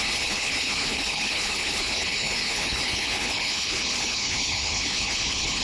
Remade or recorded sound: remade